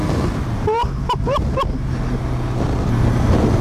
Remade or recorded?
recorded